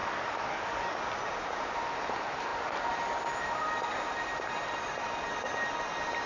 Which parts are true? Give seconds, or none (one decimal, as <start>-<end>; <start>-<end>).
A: 1.0-6.3